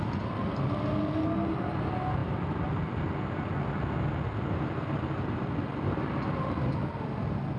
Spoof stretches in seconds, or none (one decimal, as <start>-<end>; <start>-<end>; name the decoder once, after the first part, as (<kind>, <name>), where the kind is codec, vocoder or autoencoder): none